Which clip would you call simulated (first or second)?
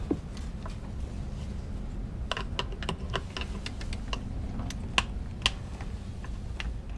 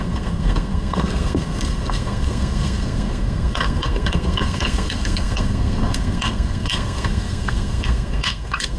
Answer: second